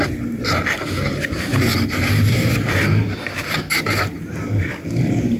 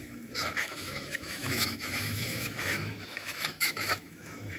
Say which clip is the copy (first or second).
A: second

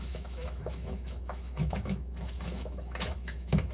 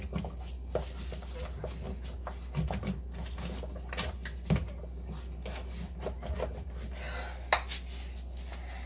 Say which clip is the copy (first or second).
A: first